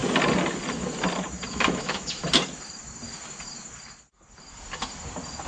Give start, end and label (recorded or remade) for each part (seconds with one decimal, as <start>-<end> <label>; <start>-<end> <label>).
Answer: 0.0-1.5 recorded; 1.5-2.2 remade; 2.2-5.5 recorded